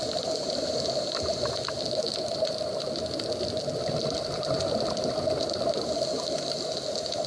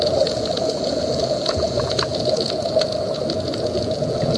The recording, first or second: first